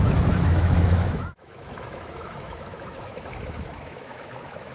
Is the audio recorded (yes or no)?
no